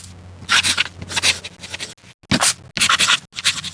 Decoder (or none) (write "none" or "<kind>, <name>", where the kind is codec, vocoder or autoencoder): none